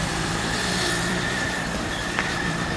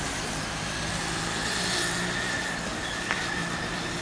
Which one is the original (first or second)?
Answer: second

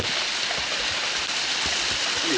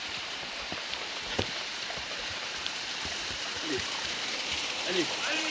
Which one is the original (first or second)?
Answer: first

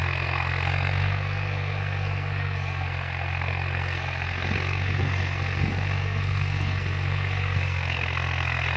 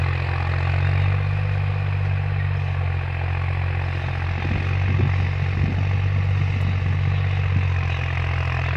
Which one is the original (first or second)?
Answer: second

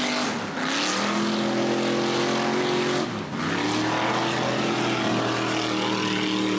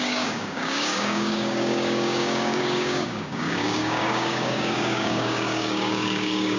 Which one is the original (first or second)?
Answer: first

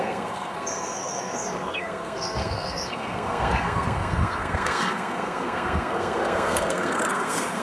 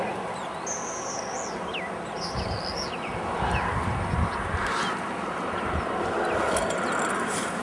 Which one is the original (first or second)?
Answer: second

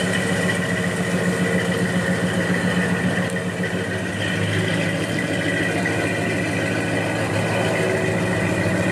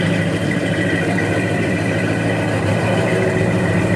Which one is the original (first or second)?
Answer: first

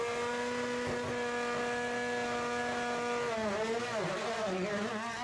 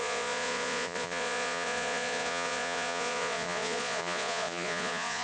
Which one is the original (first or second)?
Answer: first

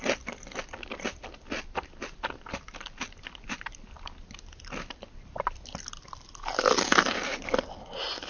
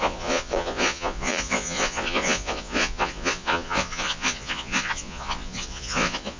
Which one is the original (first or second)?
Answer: first